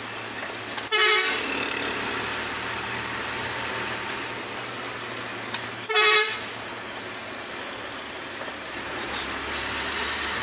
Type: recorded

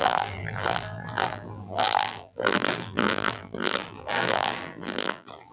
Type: remade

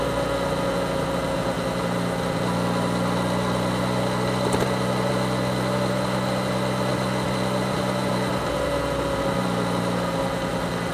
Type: recorded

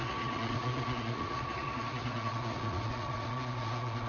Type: remade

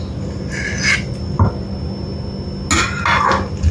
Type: recorded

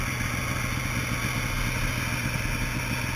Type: recorded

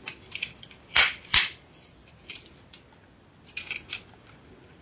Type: remade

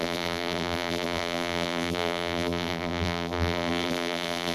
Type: remade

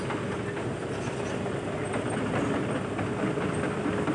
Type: recorded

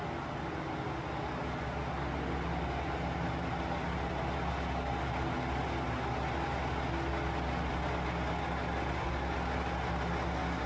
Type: recorded